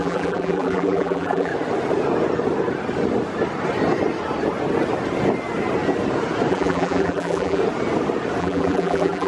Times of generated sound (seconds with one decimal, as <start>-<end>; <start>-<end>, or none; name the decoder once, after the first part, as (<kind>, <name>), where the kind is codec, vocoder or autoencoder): 0.0-1.5 (vocoder, BigVGAN v2); 6.5-7.6; 8.4-9.3